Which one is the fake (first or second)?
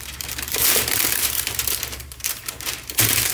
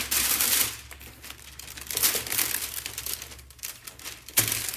first